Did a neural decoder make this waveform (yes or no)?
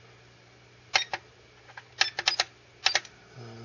no